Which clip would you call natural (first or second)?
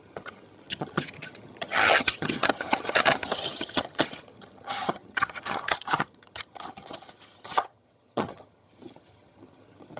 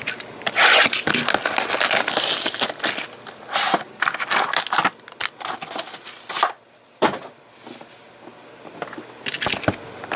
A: second